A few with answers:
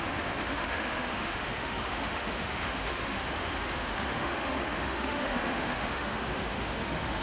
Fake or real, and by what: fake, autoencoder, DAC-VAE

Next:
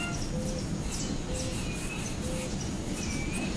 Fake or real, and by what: real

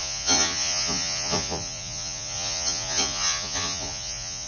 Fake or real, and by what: fake, vocoder, Vocos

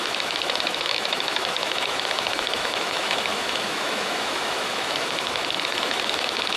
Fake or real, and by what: fake, autoencoder, DAC-VAE